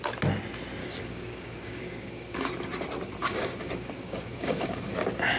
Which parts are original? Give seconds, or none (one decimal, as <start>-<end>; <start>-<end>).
0.0-0.8; 2.5-3.2; 4.9-5.4